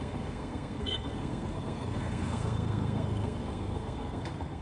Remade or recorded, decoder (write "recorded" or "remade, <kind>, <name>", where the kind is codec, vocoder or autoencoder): remade, codec, SNAC